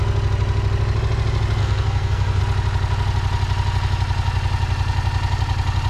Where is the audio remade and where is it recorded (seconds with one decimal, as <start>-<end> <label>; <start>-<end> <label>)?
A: 0.0-1.6 recorded; 1.6-2.4 remade; 2.4-5.9 recorded

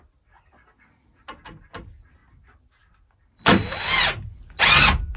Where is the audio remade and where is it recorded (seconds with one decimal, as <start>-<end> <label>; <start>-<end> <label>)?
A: 0.0-5.2 recorded

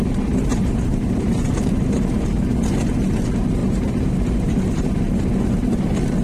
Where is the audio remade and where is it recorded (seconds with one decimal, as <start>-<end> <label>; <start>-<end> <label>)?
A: 0.0-0.5 recorded; 0.5-1.7 remade; 1.7-3.6 recorded; 3.6-4.9 remade; 4.9-6.2 recorded

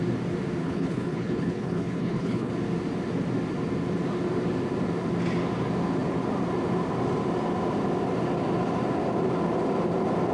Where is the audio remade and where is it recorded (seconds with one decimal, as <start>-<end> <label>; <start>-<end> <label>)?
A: 0.0-0.6 recorded; 0.6-2.5 remade; 2.5-10.3 recorded

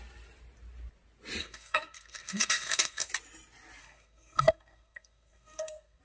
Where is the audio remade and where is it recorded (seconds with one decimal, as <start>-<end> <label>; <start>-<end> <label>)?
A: 0.0-1.4 recorded; 1.4-3.1 remade; 3.1-3.8 recorded; 3.8-6.0 remade

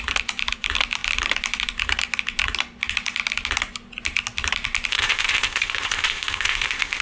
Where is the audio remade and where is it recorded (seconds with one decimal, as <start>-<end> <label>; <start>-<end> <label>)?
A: 0.0-4.9 recorded; 4.9-7.0 remade

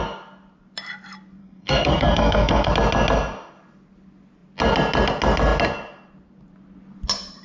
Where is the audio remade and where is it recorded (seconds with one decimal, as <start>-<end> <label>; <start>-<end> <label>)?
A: 0.0-1.4 recorded; 1.4-2.7 remade; 2.7-7.4 recorded